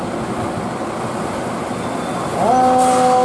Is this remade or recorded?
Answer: recorded